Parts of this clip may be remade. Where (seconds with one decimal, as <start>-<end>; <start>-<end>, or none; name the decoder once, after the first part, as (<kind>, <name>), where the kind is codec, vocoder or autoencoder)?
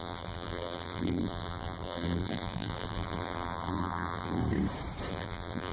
0.0-4.4 (vocoder, BigVGAN v2); 5.1-5.7